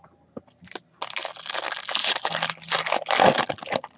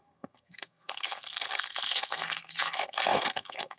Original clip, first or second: first